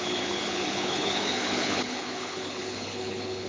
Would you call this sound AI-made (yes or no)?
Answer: yes